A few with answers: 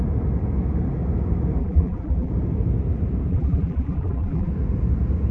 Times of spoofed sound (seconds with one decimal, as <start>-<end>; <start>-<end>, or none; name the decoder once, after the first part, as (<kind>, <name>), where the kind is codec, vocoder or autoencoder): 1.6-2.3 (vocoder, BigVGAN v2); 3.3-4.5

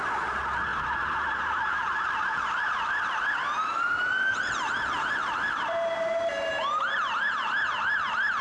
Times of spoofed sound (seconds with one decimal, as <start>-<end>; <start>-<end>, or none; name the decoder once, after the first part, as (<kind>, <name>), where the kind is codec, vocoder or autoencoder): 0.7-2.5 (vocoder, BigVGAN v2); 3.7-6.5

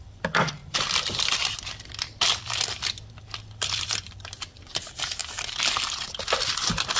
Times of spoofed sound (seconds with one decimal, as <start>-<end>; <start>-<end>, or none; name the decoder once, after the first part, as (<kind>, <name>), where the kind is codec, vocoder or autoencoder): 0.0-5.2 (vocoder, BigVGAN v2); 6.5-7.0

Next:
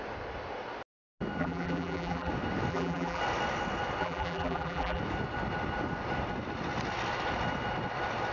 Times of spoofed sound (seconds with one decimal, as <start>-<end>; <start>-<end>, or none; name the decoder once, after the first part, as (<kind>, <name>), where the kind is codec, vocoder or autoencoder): 1.4-2.3 (vocoder, BigVGAN v2); 2.7-3.2; 4.0-5.0

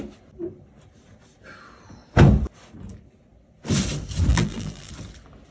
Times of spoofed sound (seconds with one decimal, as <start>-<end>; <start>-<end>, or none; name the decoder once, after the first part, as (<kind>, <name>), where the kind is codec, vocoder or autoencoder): 4.3-4.9 (vocoder, BigVGAN v2)

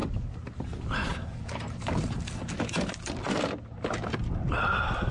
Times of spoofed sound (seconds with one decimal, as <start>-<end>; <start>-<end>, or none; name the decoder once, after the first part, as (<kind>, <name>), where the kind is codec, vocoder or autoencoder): 1.1-2.4 (vocoder, BigVGAN v2)

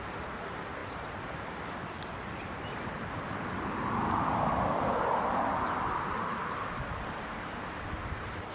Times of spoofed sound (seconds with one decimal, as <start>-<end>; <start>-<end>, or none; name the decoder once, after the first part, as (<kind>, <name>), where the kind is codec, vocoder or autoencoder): 0.0-0.8 (vocoder, BigVGAN v2); 5.6-8.5